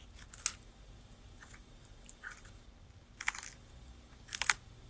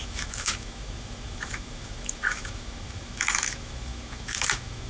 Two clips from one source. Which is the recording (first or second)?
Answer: first